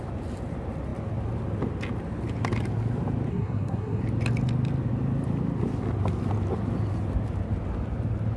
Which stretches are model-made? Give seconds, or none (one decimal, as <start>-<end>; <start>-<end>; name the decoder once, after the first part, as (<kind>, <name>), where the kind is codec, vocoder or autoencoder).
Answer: 3.3-4.0 (codec, SNAC)